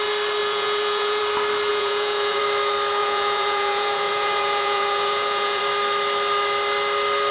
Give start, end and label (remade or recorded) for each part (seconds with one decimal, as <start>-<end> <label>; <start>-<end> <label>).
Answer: 0.0-0.4 recorded; 0.4-1.2 remade; 1.2-1.7 recorded; 1.7-2.4 remade; 2.4-3.0 recorded; 3.0-5.6 remade; 5.6-7.3 recorded